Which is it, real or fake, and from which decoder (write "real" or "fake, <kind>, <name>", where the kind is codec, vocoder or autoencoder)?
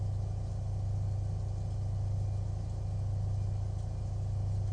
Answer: real